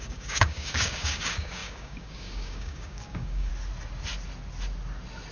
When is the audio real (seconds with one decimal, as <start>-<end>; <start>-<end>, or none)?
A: 3.5-5.3